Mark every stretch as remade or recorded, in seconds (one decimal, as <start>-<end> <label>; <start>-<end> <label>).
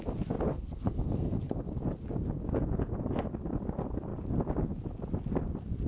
0.0-0.5 recorded; 0.5-1.6 remade; 1.6-5.9 recorded